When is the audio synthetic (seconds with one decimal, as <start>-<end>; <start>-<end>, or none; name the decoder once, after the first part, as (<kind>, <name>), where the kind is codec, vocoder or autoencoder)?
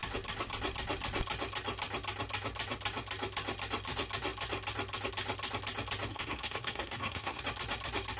6.1-7.4 (codec, SNAC)